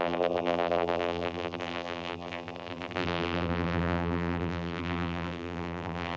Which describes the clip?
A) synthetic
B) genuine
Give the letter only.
A